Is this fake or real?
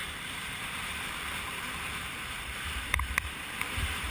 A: fake